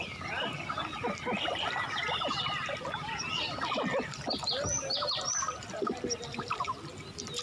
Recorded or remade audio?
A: recorded